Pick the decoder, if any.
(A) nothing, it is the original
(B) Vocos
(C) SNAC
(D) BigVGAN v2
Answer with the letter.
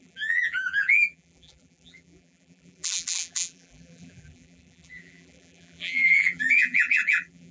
D